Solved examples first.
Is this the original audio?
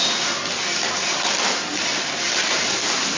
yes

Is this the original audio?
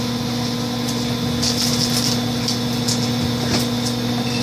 yes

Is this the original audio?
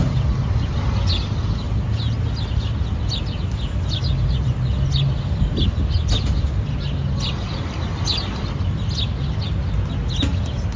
yes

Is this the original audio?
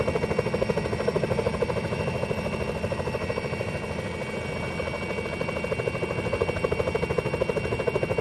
yes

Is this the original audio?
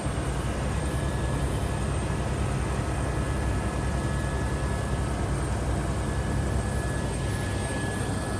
yes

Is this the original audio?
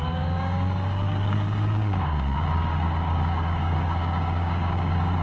no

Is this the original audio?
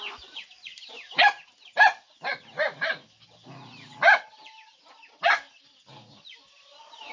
yes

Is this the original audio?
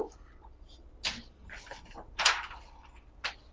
yes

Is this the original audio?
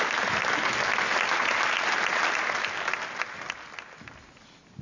yes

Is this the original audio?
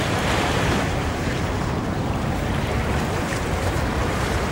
no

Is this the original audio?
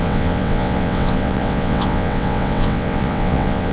no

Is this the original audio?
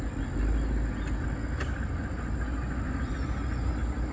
yes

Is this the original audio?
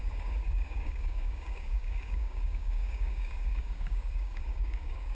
no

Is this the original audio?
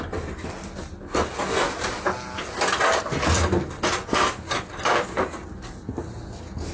yes